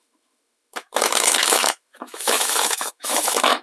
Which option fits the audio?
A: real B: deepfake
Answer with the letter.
B